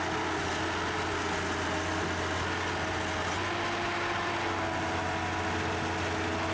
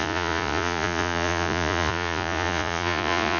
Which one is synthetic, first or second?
second